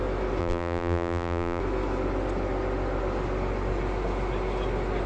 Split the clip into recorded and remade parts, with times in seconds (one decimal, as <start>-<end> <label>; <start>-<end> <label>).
0.0-0.4 recorded; 0.4-1.6 remade; 1.6-5.1 recorded